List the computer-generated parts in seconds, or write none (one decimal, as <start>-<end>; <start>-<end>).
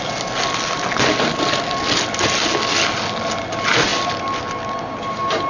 none